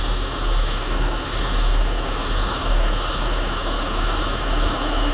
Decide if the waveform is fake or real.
fake